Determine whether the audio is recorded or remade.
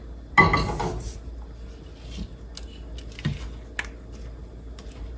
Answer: recorded